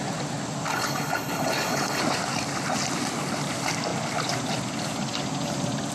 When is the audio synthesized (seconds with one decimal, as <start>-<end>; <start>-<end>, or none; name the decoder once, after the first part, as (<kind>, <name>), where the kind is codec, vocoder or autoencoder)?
0.7-2.0 (codec, HILCodec)